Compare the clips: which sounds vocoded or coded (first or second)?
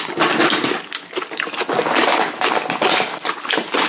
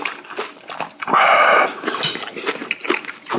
second